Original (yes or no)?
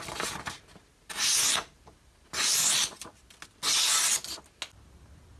yes